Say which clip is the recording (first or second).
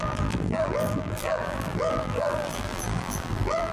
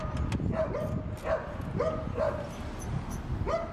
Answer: second